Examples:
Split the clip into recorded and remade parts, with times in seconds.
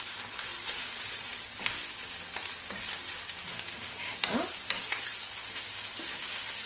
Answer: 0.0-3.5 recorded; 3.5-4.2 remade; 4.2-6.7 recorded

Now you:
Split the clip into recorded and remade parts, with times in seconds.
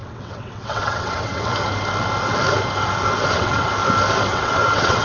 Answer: 0.0-1.5 remade; 1.5-3.3 recorded; 3.3-3.7 remade; 3.7-4.3 recorded; 4.3-5.0 remade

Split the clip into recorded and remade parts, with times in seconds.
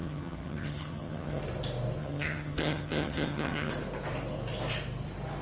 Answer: 0.0-1.4 remade; 1.4-2.0 recorded; 2.0-3.7 remade; 3.7-5.4 recorded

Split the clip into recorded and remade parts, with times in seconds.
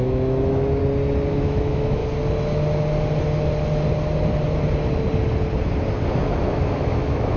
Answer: 0.0-0.8 remade; 0.8-1.3 recorded; 1.3-2.0 remade; 2.0-6.4 recorded; 6.4-7.4 remade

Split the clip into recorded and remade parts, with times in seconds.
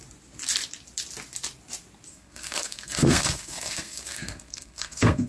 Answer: 0.0-2.1 recorded; 2.1-5.3 remade